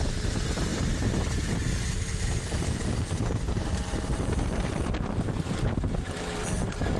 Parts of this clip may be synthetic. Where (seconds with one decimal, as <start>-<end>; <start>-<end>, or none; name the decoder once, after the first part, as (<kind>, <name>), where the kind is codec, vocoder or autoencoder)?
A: 0.0-7.0 (vocoder, BigVGAN v2)